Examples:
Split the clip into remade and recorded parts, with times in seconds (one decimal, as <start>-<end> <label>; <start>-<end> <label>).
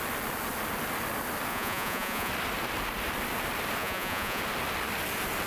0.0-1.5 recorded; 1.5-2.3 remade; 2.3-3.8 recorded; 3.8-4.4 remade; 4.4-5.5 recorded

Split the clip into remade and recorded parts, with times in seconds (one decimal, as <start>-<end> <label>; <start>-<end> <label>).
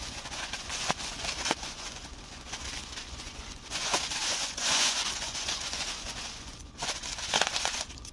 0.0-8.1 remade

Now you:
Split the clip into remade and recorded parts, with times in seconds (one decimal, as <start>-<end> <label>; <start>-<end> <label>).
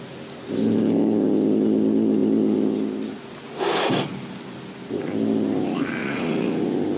0.0-6.0 recorded; 6.0-6.6 remade; 6.6-7.0 recorded